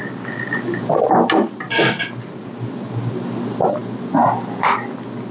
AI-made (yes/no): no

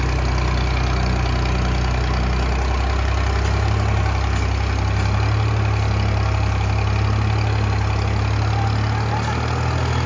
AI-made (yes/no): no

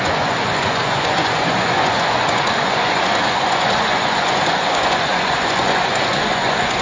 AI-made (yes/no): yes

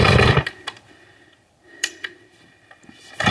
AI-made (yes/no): yes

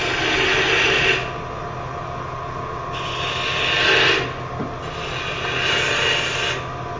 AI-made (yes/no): no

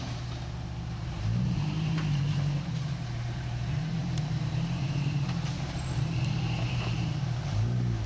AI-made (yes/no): yes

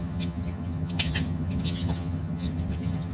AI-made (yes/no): yes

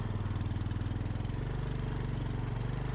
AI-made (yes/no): no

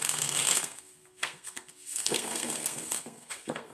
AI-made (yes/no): yes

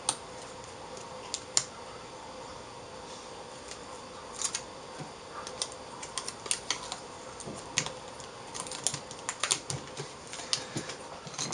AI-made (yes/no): no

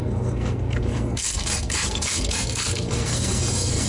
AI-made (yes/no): yes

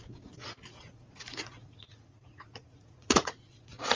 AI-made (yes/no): yes